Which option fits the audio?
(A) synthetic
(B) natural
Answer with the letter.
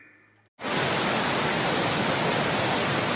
B